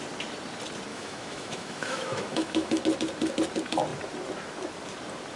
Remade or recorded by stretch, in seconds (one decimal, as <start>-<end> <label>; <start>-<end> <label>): 0.0-0.9 recorded; 0.9-2.8 remade; 2.8-5.4 recorded